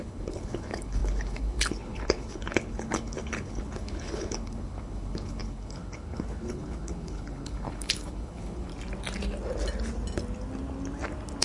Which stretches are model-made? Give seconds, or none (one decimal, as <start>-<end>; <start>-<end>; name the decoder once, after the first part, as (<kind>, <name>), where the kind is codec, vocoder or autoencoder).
0.0-8.7 (codec, HILCodec)